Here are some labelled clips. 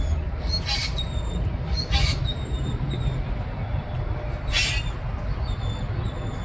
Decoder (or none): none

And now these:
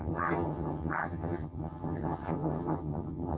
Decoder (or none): vocoder, HiFi-GAN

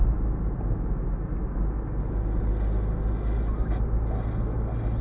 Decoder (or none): none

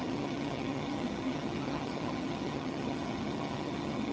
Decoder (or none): vocoder, HiFi-GAN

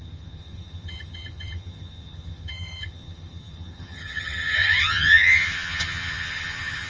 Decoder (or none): vocoder, HiFi-GAN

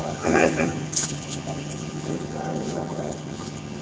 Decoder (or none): vocoder, HiFi-GAN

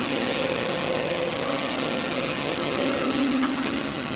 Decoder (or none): vocoder, HiFi-GAN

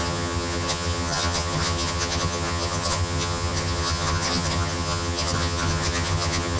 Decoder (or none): vocoder, HiFi-GAN